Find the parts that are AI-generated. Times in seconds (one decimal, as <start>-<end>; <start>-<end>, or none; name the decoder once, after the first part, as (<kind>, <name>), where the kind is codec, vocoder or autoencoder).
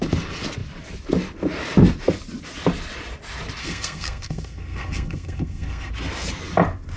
3.6-5.9 (codec, SNAC)